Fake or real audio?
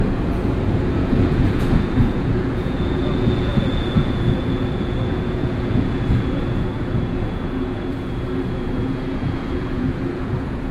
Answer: fake